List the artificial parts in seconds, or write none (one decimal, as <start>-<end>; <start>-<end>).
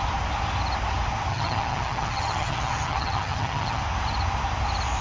1.3-3.8